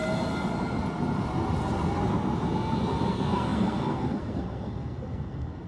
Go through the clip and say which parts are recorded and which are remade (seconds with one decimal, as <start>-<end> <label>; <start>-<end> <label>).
0.0-3.1 recorded; 3.1-5.7 remade